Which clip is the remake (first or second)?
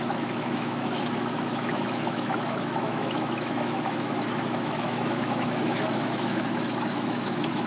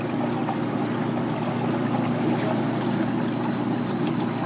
first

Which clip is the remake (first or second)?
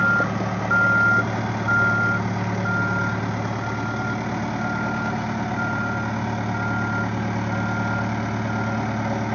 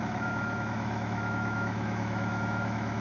second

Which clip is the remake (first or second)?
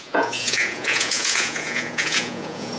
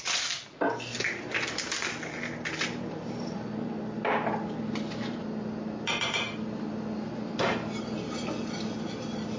first